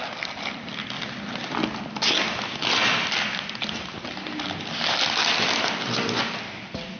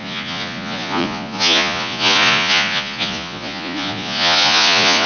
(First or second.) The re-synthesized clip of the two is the second